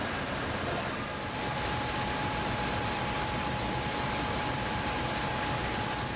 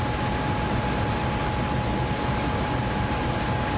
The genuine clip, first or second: second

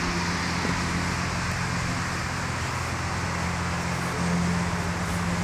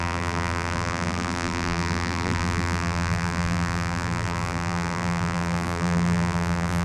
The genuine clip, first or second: first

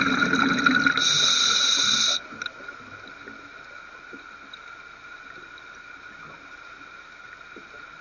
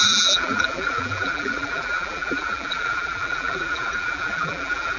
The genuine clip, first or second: first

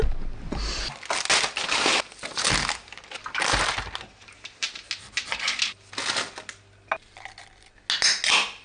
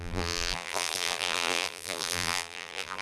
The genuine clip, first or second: first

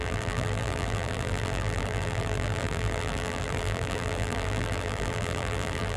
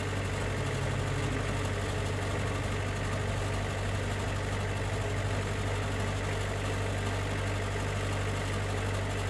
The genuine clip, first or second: second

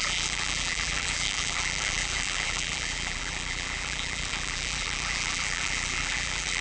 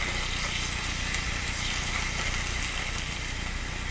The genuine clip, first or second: second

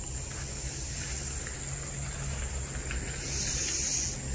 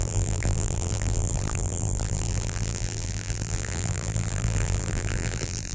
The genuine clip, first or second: first